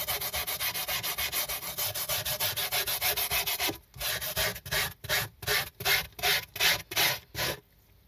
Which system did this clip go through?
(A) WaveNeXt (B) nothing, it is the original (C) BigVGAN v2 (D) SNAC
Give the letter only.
B